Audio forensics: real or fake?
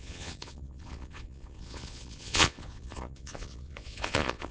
fake